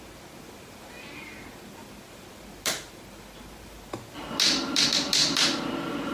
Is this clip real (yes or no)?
yes